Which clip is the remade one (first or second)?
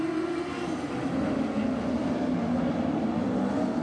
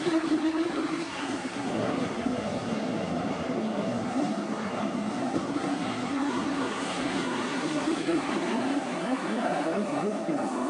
second